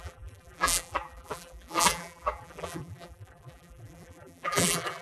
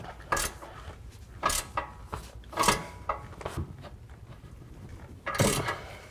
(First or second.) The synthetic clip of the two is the first